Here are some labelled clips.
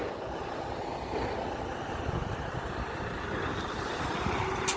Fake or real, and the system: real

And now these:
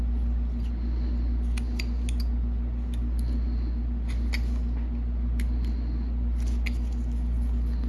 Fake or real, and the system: real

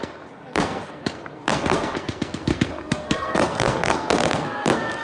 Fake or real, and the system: fake, codec, SNAC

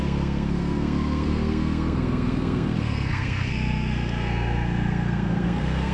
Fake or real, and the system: fake, codec, SNAC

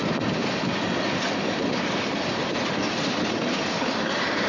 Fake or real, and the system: real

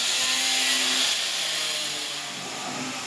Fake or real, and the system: real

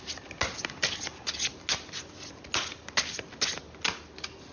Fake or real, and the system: real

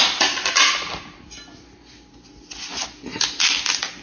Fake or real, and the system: real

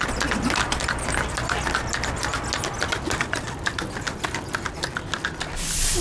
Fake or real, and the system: real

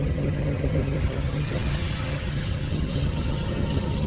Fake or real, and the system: fake, vocoder, HiFi-GAN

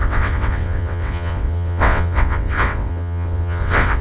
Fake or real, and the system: fake, vocoder, WaveNeXt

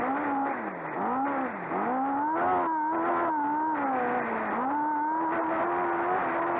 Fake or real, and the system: real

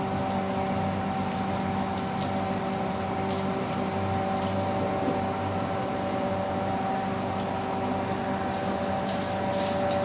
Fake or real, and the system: real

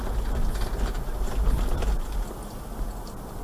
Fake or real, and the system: real